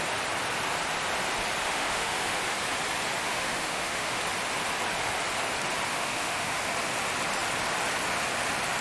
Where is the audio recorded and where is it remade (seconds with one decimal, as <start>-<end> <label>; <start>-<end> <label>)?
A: 0.0-1.6 recorded; 1.6-2.4 remade; 2.4-3.2 recorded; 3.2-4.2 remade; 4.2-5.9 recorded; 5.9-6.6 remade; 6.6-8.8 recorded